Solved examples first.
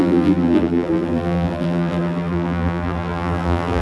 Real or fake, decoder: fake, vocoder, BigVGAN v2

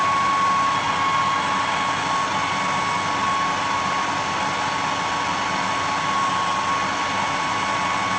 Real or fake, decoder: real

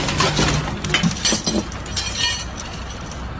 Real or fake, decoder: real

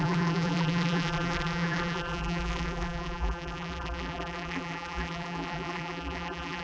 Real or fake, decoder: fake, vocoder, BigVGAN v2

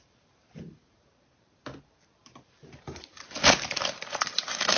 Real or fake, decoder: fake, vocoder, BigVGAN v2